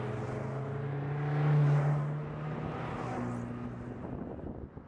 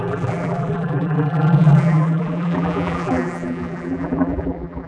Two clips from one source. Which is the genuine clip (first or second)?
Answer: first